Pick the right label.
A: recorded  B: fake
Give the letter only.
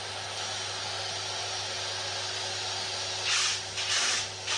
A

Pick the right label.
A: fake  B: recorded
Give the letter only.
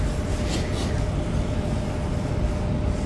B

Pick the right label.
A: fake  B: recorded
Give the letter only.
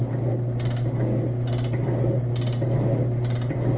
B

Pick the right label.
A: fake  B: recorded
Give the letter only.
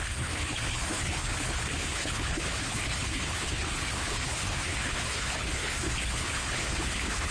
A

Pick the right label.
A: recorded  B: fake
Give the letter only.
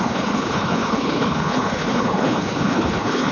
B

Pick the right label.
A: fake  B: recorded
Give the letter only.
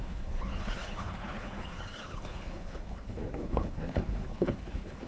A